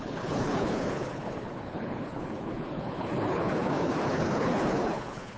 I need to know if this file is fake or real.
fake